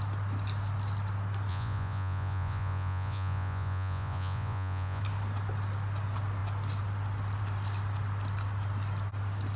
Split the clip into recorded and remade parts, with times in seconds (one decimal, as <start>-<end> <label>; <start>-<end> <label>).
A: 0.0-1.5 recorded; 1.5-5.0 remade; 5.0-9.6 recorded